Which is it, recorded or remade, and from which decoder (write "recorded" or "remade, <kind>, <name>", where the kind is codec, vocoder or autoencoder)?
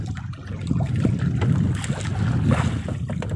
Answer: recorded